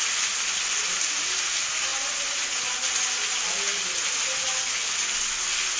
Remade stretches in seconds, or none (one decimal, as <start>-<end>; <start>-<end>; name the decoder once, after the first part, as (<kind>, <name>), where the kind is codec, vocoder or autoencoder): none